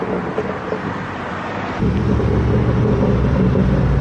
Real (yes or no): yes